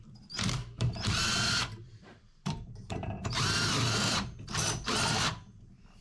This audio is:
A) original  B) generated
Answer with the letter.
B